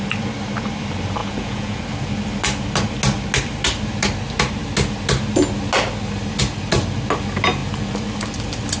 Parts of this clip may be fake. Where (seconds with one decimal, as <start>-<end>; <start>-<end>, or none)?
1.2-1.8